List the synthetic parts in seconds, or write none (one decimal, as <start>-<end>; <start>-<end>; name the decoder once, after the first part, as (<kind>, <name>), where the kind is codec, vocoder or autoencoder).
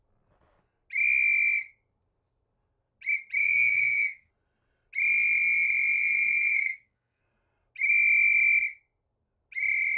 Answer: 3.4-4.3 (codec, DAC); 6.0-7.2